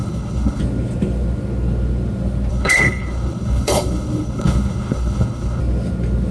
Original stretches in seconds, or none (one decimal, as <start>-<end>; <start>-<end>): 0.6-2.5; 5.6-6.3